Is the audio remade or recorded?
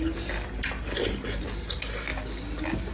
recorded